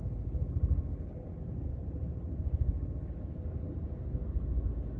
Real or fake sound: real